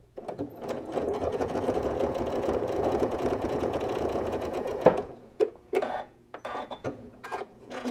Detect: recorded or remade remade